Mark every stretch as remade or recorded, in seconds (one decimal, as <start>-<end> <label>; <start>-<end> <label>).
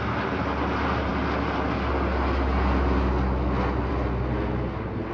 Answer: 0.0-5.1 recorded